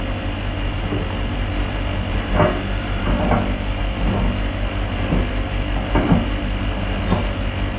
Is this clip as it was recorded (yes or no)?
yes